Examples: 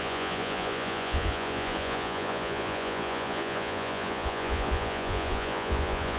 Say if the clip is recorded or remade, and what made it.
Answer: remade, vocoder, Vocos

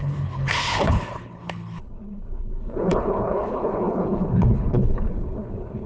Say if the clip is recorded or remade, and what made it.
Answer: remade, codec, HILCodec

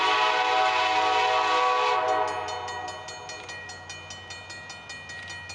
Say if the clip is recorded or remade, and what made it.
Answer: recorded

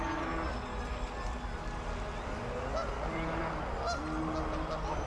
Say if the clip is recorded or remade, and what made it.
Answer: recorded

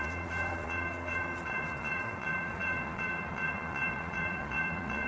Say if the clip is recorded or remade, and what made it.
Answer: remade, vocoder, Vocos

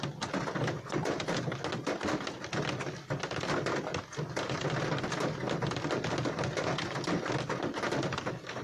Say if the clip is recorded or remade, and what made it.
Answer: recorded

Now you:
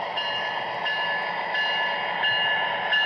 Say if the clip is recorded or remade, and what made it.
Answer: recorded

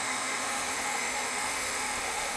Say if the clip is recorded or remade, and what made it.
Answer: remade, autoencoder, DAC-VAE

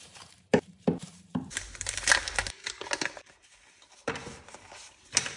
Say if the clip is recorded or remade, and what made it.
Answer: remade, vocoder, BigVGAN v2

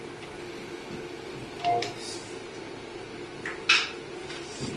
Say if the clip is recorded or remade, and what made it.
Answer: recorded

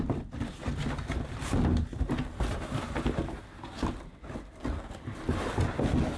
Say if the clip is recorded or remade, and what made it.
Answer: recorded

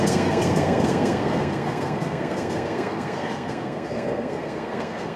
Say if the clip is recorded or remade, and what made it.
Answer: remade, codec, SNAC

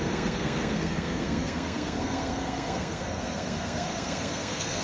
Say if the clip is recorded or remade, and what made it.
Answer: remade, codec, SNAC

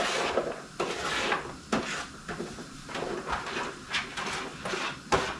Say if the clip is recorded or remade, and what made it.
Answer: recorded